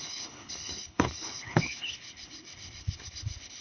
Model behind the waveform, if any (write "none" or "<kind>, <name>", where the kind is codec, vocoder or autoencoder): codec, HILCodec